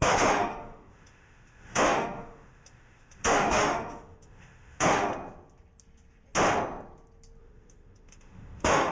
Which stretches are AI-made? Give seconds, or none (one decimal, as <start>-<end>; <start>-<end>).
0.0-5.1; 7.4-8.9